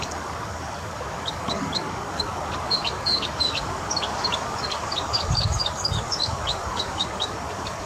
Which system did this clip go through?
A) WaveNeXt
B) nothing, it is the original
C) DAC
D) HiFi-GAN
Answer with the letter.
C